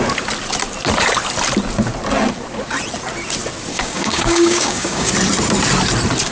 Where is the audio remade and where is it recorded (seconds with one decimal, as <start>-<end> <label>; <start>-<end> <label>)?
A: 0.0-3.7 recorded; 3.7-5.1 remade; 5.1-6.3 recorded